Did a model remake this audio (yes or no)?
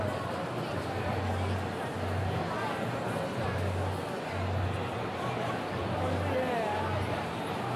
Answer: no